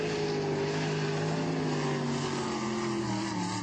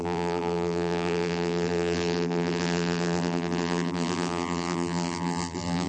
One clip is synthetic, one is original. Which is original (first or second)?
first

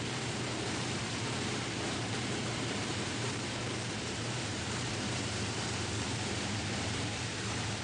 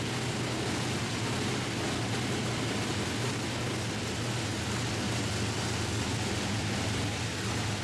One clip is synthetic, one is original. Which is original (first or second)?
second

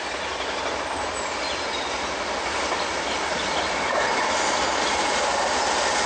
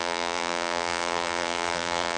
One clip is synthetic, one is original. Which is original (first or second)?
first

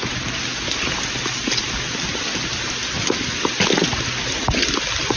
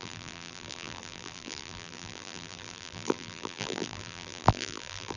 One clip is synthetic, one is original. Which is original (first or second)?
first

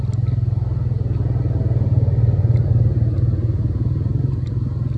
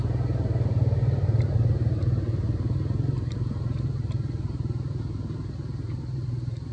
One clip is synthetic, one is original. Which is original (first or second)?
first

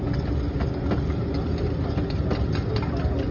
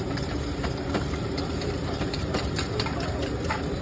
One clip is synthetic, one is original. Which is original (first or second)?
first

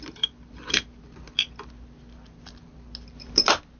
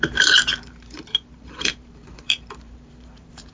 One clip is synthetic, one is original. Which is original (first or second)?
first